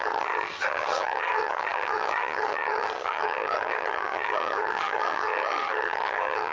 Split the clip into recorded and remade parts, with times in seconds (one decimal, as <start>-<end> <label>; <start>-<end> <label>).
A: 0.0-6.5 remade